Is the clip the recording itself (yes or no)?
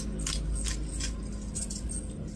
yes